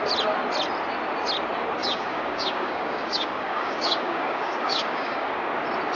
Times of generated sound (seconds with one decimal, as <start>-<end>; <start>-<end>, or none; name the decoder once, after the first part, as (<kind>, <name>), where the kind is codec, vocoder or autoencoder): 1.8-5.3 (codec, DAC)

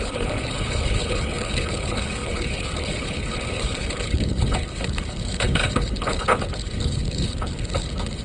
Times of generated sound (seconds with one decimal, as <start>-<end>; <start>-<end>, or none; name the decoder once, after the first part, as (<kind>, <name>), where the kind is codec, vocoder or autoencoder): 0.0-8.2 (codec, HILCodec)

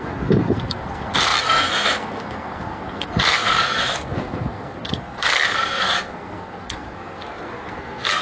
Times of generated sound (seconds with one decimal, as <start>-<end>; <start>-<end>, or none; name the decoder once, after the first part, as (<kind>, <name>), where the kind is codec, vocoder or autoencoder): 0.0-8.2 (codec, SNAC)